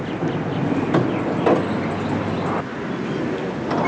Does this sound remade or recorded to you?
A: recorded